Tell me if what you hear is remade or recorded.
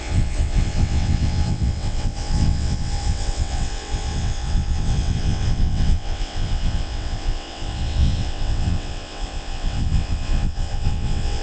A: remade